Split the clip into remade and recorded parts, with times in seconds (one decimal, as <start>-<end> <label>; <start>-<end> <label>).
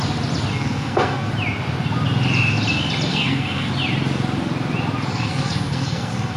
0.0-0.5 recorded; 0.5-1.3 remade; 1.3-3.1 recorded; 3.1-3.7 remade; 3.7-5.1 recorded; 5.1-6.4 remade